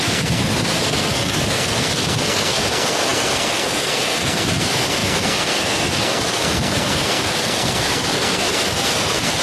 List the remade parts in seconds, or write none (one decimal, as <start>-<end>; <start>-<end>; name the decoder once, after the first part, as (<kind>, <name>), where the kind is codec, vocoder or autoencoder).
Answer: 0.0-9.4 (codec, SNAC)